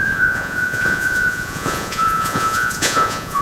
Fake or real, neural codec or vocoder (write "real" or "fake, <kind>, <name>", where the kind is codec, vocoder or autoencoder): fake, vocoder, Vocos